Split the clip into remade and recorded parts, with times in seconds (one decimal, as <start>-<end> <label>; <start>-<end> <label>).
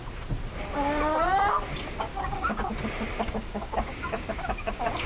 0.0-2.1 recorded; 2.1-2.7 remade; 2.7-3.4 recorded; 3.4-5.1 remade